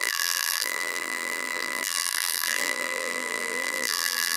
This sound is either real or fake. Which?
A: fake